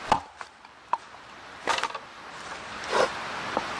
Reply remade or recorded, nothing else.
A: recorded